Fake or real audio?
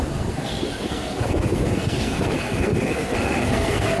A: fake